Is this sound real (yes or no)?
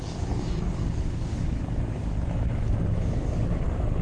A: no